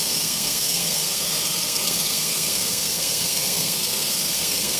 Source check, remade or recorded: remade